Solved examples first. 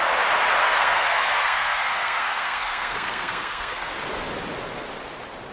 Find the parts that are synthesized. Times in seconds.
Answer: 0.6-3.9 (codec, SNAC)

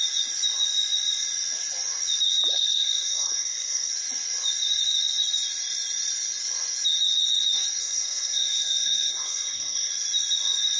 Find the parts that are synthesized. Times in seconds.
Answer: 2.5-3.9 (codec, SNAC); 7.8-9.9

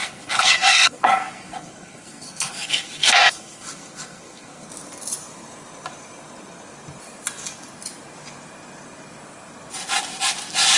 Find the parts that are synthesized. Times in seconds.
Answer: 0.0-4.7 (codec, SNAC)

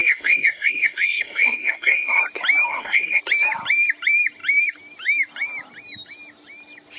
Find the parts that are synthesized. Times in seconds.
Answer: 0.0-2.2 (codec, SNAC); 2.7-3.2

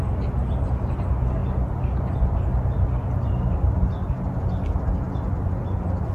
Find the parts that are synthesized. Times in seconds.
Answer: none

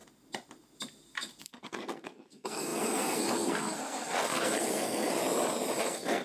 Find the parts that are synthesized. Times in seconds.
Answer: 1.4-5.2 (codec, SNAC); 5.8-6.2